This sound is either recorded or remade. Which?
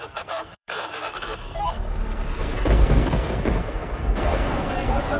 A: remade